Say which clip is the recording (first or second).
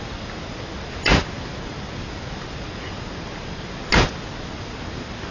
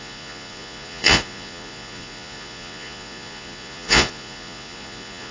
first